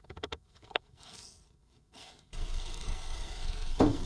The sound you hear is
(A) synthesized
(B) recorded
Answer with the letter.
A